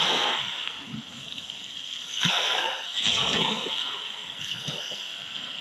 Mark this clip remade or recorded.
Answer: remade